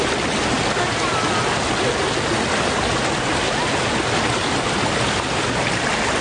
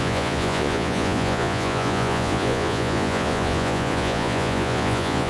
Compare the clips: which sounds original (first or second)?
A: first